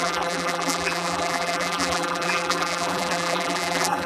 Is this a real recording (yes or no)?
no